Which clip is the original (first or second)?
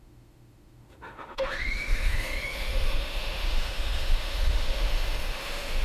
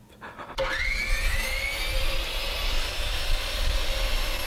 second